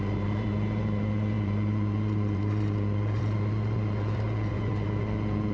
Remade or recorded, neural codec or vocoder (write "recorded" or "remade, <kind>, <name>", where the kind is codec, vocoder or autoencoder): remade, vocoder, Vocos